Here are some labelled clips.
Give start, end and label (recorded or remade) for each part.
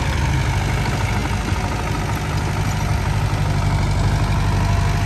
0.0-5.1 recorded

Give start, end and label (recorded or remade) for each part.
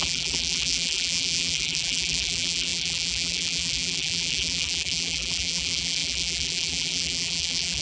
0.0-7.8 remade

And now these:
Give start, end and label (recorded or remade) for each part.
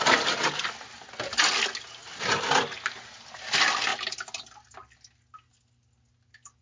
0.0-6.6 recorded